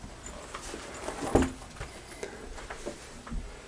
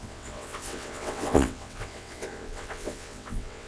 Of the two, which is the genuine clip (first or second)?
first